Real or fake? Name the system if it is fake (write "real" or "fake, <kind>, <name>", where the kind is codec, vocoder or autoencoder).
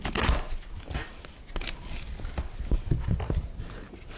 real